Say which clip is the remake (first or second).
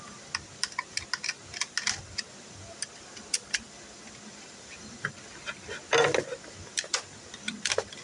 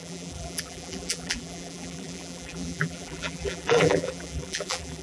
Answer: second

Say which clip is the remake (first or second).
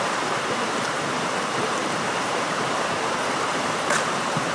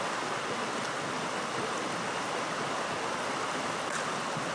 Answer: first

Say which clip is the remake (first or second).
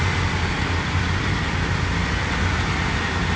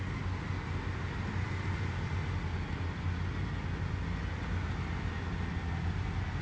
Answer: first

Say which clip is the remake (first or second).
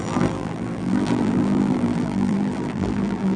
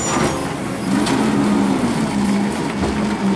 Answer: first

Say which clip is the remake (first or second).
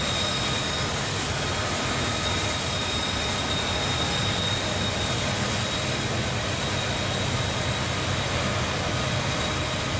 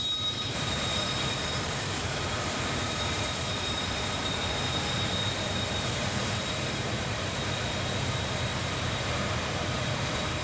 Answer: second